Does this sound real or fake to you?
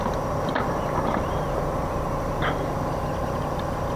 fake